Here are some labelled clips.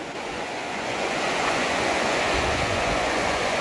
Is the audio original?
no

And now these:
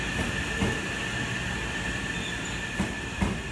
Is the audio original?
yes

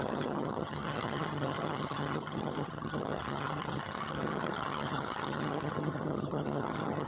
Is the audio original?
no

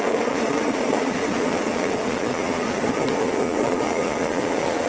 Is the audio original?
no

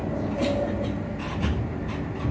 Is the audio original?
no